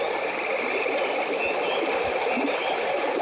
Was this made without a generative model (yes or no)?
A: yes